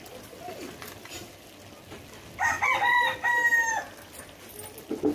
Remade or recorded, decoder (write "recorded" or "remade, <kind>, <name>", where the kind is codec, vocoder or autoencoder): recorded